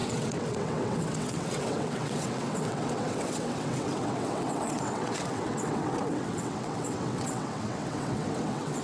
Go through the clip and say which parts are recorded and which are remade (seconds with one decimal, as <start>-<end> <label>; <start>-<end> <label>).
0.0-8.8 remade